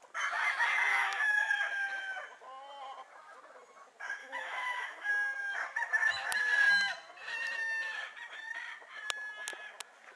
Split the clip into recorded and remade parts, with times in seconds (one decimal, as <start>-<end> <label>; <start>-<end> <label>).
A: 0.0-0.9 recorded; 0.9-1.5 remade; 1.5-4.2 recorded; 4.2-5.1 remade; 5.1-10.2 recorded